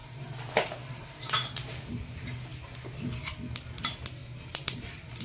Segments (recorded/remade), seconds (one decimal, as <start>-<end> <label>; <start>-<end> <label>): 0.0-2.0 remade; 2.0-4.2 recorded; 4.2-5.2 remade